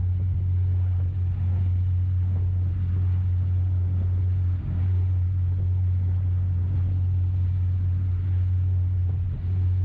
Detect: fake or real real